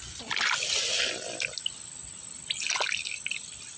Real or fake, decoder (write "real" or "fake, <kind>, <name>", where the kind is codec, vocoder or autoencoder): real